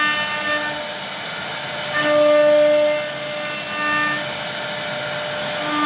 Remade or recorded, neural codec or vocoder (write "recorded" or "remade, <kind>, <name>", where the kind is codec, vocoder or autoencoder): recorded